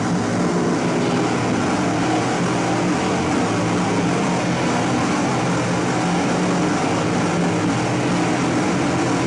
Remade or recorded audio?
recorded